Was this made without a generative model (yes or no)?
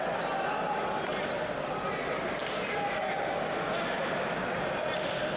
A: yes